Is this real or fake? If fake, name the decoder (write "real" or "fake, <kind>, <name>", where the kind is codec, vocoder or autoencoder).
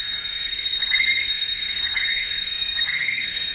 fake, codec, SNAC